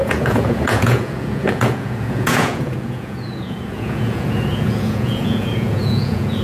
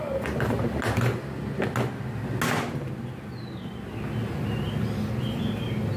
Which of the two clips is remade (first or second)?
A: first